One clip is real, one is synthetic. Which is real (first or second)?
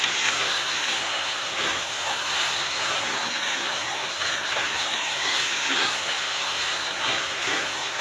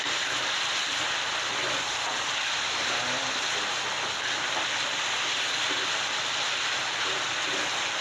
second